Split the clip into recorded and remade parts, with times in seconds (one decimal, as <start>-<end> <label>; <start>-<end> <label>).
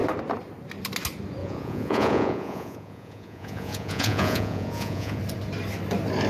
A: 0.0-1.4 recorded; 1.4-5.2 remade; 5.2-6.3 recorded